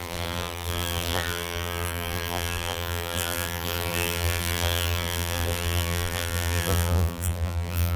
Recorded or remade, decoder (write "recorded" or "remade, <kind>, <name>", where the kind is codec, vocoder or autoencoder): remade, vocoder, BigVGAN v2